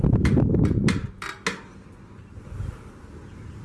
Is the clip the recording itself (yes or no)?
yes